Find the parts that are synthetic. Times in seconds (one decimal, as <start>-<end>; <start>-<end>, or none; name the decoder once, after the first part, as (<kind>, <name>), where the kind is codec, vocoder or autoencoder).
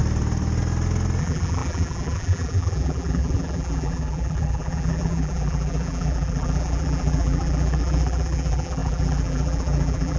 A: 1.2-10.2 (vocoder, BigVGAN v2)